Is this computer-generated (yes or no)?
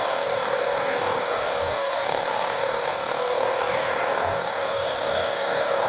yes